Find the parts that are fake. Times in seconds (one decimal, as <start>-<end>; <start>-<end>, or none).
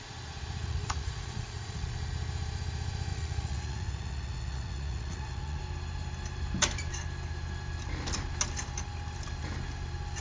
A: 0.6-1.9; 3.1-5.6